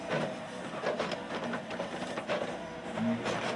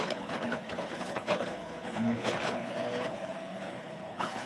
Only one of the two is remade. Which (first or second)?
second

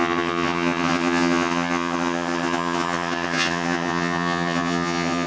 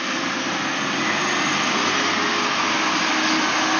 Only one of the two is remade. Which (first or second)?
first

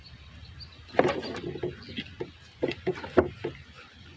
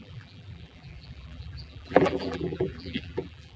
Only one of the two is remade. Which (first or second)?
second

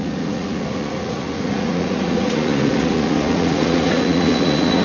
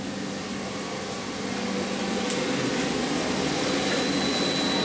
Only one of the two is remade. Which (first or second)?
first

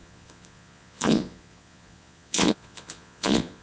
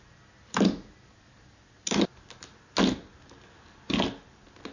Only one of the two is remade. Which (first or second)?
first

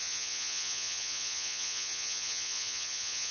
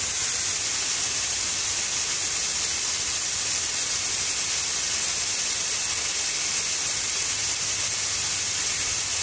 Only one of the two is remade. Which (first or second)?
first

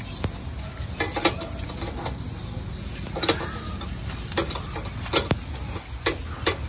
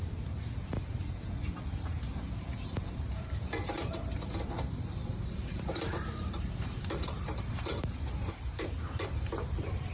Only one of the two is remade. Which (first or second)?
second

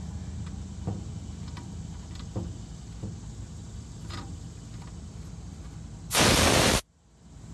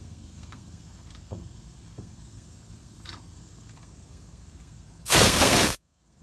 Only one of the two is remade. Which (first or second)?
second